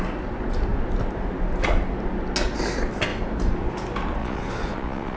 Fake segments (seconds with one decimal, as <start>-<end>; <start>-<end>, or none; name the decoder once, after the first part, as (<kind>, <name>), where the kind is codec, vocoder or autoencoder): 4.2-5.2 (vocoder, Vocos)